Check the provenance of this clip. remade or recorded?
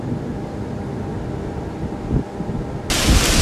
recorded